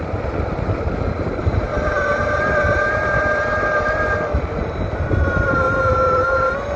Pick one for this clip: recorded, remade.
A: recorded